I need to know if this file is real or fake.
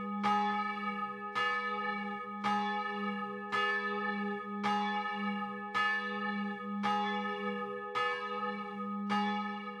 real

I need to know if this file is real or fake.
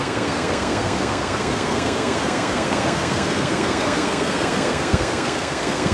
fake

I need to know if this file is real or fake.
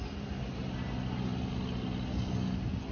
real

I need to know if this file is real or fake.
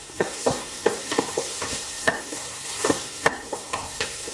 fake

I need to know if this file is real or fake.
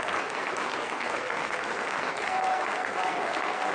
fake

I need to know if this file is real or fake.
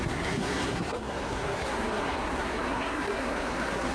fake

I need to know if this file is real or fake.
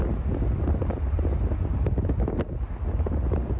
real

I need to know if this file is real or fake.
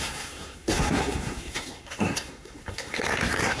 fake